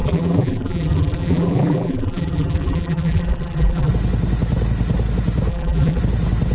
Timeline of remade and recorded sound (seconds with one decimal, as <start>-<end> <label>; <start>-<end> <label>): 0.0-3.9 remade; 3.9-5.5 recorded; 5.5-6.0 remade; 6.0-6.5 recorded